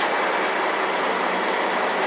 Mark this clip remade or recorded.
recorded